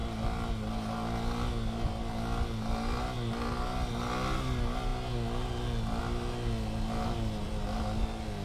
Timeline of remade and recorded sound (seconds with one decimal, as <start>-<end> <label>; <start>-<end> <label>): 0.0-8.4 recorded